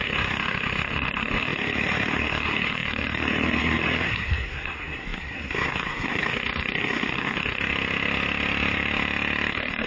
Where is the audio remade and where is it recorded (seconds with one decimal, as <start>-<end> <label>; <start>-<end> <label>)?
0.0-7.6 remade; 7.6-9.5 recorded; 9.5-9.9 remade